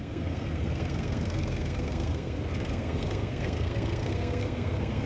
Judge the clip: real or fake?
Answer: fake